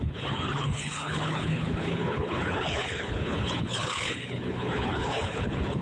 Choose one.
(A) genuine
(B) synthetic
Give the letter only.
B